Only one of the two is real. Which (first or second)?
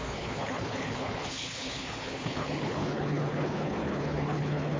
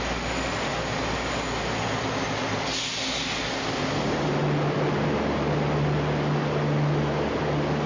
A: second